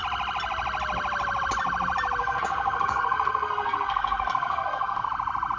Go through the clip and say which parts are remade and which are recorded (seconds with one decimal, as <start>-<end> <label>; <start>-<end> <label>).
0.0-2.2 recorded; 2.2-5.1 remade; 5.1-5.6 recorded